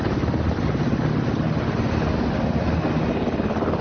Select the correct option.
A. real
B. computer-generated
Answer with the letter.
A